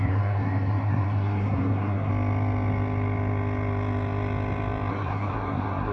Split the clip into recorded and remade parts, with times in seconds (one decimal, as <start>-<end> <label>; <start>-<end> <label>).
0.0-2.1 remade; 2.1-4.9 recorded; 4.9-5.9 remade